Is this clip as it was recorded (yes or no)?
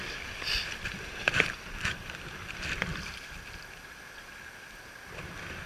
no